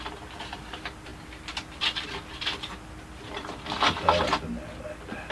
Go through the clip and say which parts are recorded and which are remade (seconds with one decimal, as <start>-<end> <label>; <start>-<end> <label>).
0.0-5.3 recorded